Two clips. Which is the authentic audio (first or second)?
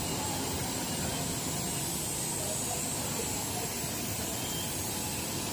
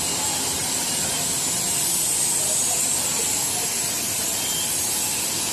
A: second